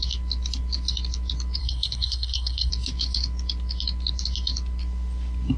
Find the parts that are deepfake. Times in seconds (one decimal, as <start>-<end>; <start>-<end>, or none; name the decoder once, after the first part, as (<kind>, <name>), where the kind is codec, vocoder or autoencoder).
1.6-2.7 (codec, SNAC)